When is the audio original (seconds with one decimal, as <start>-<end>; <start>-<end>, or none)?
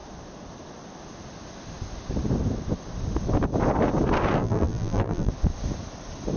0.0-4.4; 5.3-6.4